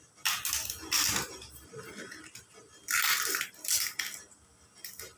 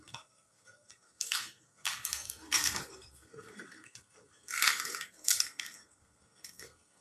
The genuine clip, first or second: first